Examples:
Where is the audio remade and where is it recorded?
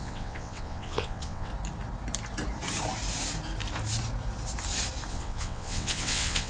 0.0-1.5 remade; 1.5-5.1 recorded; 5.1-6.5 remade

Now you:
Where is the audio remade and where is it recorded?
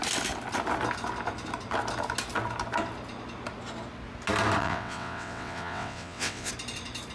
0.0-4.6 recorded; 4.6-6.5 remade; 6.5-7.1 recorded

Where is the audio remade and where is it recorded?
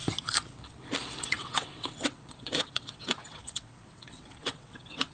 0.0-1.2 recorded; 1.2-5.1 remade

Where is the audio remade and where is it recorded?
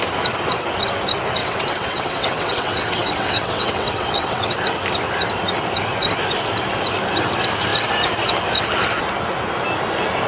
0.0-1.4 recorded; 1.4-4.6 remade; 4.6-10.3 recorded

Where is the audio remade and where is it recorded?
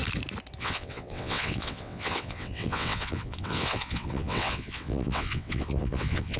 0.0-0.6 recorded; 0.6-6.4 remade